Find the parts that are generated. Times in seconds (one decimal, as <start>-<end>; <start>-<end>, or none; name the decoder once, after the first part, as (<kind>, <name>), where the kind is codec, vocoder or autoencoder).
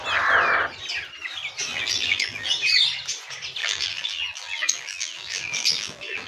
1.7-2.5 (vocoder, BigVGAN v2); 3.6-6.3